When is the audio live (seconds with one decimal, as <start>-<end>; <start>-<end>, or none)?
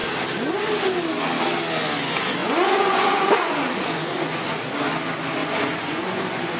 0.0-2.4; 4.6-5.4